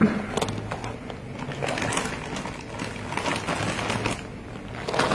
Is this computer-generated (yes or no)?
no